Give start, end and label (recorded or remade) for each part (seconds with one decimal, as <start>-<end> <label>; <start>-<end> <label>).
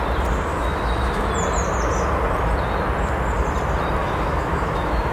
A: 0.0-0.5 recorded; 0.5-1.3 remade; 1.3-4.0 recorded; 4.0-5.1 remade